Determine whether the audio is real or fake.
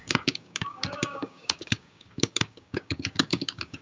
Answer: fake